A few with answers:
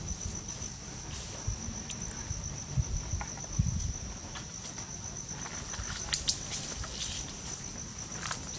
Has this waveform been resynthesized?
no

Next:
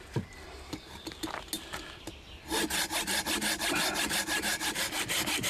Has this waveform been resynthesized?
no